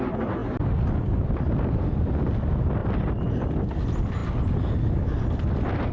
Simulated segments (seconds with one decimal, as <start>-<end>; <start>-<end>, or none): none